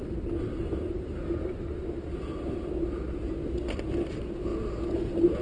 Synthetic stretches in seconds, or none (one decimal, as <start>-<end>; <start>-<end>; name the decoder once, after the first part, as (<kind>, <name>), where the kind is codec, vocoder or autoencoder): none